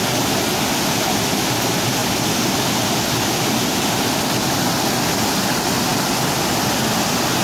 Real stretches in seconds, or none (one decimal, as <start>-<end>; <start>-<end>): 0.0-7.4